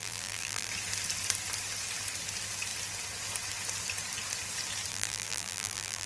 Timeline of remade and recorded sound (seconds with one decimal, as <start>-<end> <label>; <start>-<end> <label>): 0.0-0.7 remade; 0.7-4.9 recorded; 4.9-6.1 remade